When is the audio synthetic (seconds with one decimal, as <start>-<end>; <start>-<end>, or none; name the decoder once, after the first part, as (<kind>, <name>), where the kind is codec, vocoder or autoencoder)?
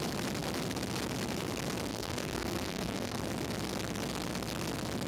1.9-3.2 (codec, SNAC)